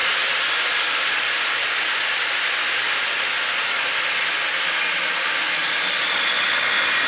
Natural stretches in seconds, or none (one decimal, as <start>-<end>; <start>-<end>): 0.0-7.1